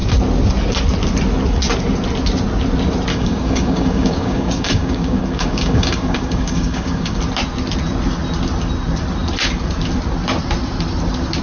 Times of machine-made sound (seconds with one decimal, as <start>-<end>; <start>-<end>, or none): 3.1-7.2